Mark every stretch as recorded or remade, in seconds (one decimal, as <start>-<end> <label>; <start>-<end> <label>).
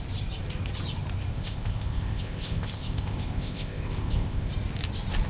0.0-1.3 recorded; 1.3-4.5 remade; 4.5-5.3 recorded